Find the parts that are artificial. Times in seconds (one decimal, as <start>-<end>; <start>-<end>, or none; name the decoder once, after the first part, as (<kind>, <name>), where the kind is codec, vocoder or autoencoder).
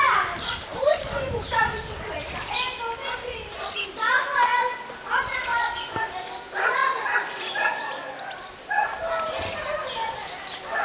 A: none